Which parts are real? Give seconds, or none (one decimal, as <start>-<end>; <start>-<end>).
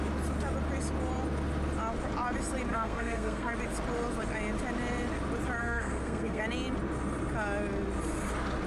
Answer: 0.0-2.7; 3.5-5.6; 6.4-8.7